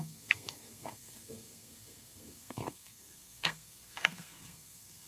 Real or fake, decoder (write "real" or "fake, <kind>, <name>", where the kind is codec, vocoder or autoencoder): fake, codec, SNAC